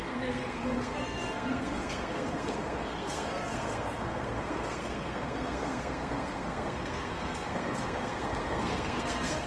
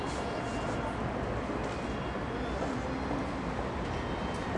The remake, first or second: first